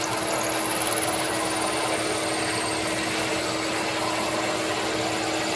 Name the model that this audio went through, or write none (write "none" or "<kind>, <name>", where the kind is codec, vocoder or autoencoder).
none